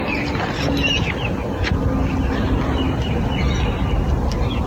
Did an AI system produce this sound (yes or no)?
no